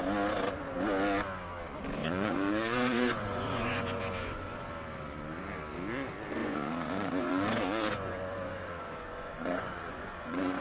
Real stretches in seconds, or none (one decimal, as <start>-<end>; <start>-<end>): 0.0-2.0; 4.7-6.4